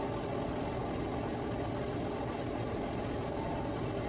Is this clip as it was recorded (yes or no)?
yes